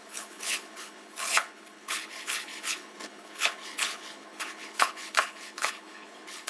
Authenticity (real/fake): fake